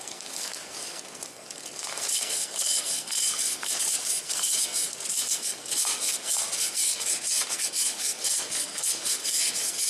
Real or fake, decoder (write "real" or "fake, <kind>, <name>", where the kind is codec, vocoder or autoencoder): fake, codec, SNAC